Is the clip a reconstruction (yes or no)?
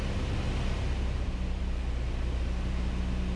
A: no